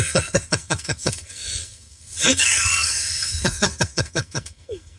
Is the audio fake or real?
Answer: fake